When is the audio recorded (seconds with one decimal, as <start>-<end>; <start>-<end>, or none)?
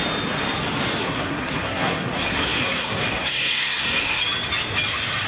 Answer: 0.0-1.0; 4.2-5.3